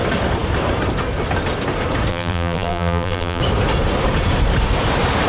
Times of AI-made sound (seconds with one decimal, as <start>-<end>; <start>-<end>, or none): 2.1-3.4